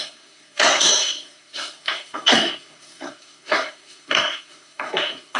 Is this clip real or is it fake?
fake